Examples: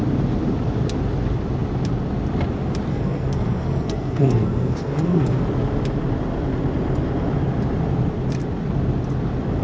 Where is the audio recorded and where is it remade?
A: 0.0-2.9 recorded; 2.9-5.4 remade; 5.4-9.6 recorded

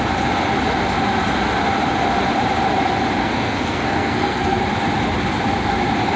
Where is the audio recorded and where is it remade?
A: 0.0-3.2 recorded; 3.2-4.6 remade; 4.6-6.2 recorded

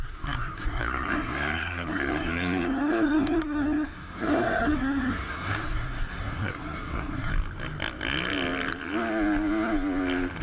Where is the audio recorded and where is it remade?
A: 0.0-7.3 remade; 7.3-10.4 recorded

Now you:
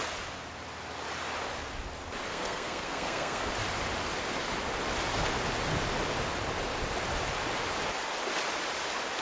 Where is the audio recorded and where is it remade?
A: 0.0-2.3 recorded; 2.3-3.5 remade; 3.5-9.2 recorded